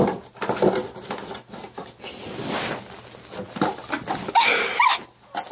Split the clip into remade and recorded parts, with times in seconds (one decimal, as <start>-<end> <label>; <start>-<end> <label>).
0.0-5.5 recorded